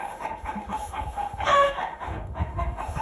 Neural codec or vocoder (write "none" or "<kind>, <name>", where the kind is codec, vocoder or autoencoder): autoencoder, DAC-VAE